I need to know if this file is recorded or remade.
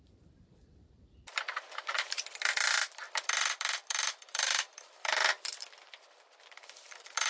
remade